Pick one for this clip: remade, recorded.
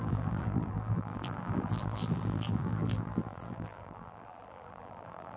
remade